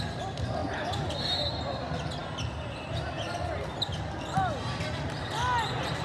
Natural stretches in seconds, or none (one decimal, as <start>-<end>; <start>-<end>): 0.0-6.0